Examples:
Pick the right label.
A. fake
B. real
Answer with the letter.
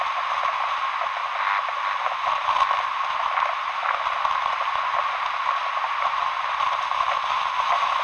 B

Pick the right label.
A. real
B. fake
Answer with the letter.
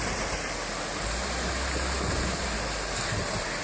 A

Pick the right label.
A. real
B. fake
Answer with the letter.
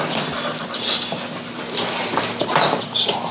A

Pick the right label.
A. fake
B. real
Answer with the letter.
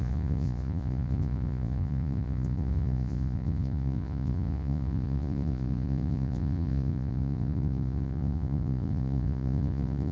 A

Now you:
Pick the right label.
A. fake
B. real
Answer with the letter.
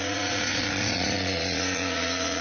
A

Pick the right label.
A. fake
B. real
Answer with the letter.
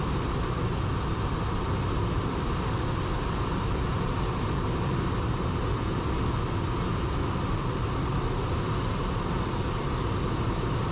B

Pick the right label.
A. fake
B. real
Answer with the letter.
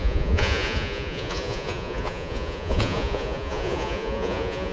A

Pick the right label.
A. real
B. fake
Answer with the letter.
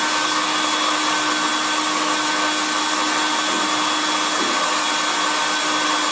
A